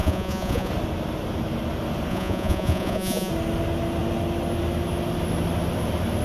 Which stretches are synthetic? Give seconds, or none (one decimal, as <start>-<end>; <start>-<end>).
0.0-0.7; 2.1-3.3